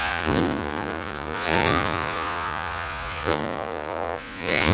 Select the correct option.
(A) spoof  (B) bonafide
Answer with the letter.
A